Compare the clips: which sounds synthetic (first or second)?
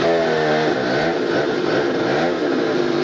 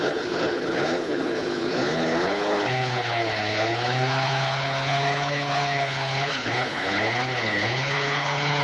second